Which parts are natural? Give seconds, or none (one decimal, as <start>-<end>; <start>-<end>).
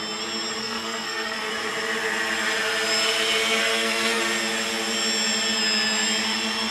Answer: 0.0-0.6; 1.5-3.6; 4.2-6.7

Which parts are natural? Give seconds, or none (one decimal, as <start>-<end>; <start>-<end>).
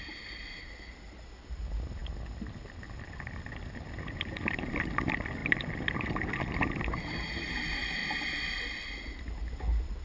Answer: 0.0-10.0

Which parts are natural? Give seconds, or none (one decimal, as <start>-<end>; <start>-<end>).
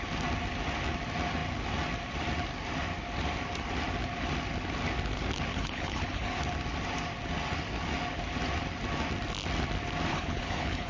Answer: 0.0-5.5; 6.4-10.1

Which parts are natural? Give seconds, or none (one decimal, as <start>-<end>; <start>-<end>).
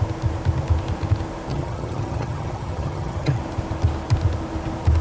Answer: 0.0-1.5; 3.4-5.0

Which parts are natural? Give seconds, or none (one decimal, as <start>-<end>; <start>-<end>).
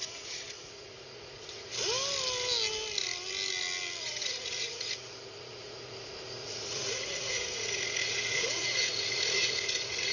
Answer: 1.7-4.0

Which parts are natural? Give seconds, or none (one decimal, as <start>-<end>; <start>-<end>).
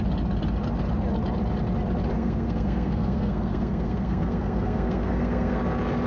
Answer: 0.0-2.1; 5.6-6.1